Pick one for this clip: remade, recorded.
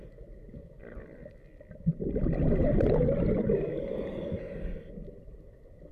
recorded